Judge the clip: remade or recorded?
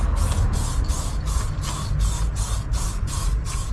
recorded